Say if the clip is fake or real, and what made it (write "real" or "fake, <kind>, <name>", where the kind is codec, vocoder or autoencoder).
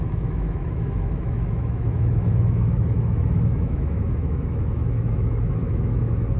fake, autoencoder, DAC-VAE